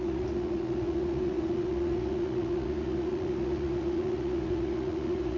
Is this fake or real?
fake